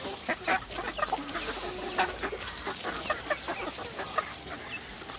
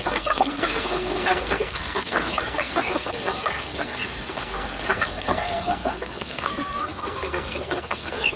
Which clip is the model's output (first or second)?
second